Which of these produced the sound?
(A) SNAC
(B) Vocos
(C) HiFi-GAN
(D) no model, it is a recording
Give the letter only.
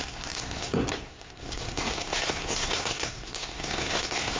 A